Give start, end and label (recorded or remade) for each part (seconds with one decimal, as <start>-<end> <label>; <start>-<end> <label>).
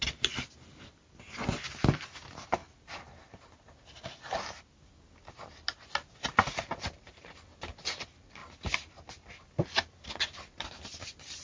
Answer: 0.0-11.4 recorded